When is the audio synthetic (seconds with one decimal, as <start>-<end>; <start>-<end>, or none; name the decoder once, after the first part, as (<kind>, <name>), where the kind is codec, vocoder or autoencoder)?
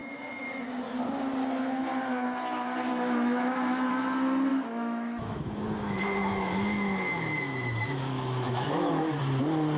0.0-0.8 (autoencoder, DAC-VAE); 2.9-3.9; 4.5-9.2